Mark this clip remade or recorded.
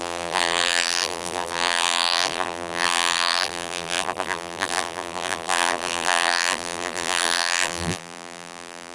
remade